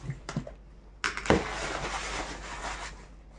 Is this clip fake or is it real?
real